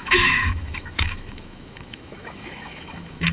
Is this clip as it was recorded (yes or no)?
no